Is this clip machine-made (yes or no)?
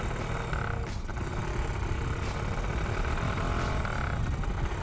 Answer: no